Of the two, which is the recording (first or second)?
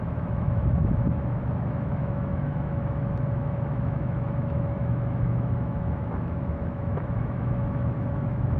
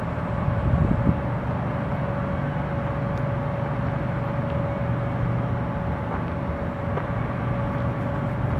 second